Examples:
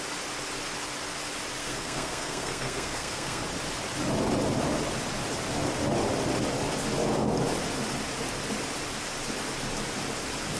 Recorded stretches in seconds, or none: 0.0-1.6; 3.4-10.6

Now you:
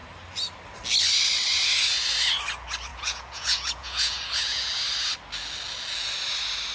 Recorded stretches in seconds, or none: 0.0-2.9; 4.8-6.7

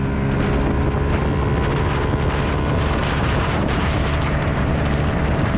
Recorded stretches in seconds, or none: 0.0-3.0

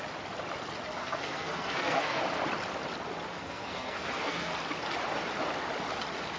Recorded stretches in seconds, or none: 0.0-1.0; 2.2-3.3; 4.5-6.4

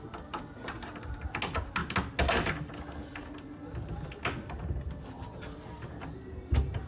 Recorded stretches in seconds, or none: 0.0-6.9

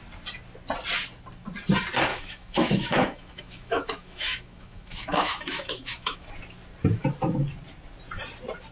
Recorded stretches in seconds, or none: 0.0-2.1; 6.3-8.7

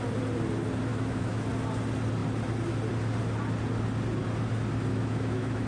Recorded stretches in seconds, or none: 0.0-0.9; 1.5-4.9

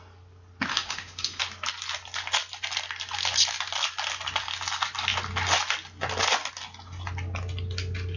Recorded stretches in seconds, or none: 0.0-0.7; 1.4-8.2